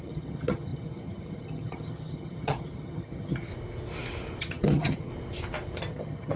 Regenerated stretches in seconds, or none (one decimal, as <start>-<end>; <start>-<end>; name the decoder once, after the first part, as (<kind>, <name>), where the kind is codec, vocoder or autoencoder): 0.0-3.5 (vocoder, HiFi-GAN); 4.4-5.1; 5.8-6.4